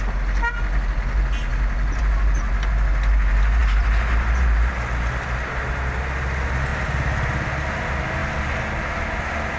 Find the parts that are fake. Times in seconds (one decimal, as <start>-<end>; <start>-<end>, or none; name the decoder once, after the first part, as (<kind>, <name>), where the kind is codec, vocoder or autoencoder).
3.6-4.7 (vocoder, BigVGAN v2)